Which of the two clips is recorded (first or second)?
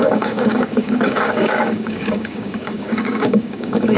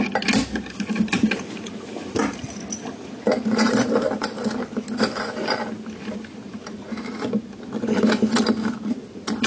second